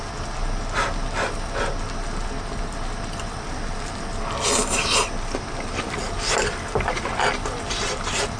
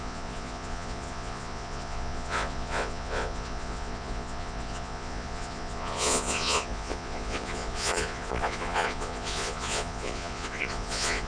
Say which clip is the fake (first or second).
second